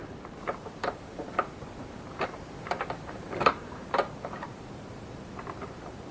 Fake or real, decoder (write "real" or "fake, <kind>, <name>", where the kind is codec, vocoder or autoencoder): fake, vocoder, BigVGAN v2